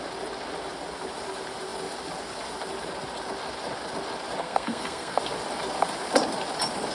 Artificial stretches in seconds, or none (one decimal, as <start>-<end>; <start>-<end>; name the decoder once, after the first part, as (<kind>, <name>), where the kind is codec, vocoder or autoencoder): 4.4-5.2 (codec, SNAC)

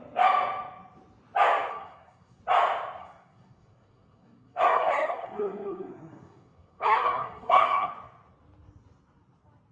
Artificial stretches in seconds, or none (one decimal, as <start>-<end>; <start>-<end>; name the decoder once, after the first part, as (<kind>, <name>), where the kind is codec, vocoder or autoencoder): 1.7-2.4 (codec, SNAC); 3.0-7.9

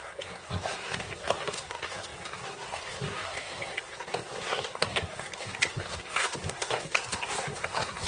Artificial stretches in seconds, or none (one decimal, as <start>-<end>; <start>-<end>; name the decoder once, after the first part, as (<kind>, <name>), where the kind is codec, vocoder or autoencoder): 0.0-8.1 (codec, SNAC)

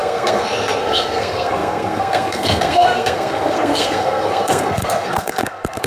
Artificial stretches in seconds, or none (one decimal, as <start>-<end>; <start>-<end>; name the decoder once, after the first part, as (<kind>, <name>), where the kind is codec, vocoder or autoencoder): 0.0-5.9 (codec, SNAC)